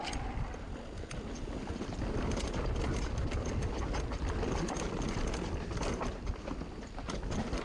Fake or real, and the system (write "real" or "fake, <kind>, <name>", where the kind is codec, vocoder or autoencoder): real